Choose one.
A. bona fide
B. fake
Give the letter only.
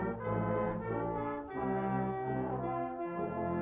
A